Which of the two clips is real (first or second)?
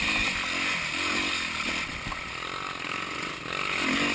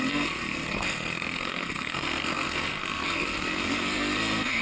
first